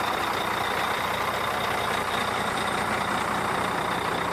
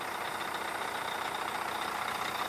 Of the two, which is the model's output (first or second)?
first